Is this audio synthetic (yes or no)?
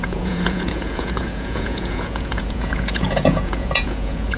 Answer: yes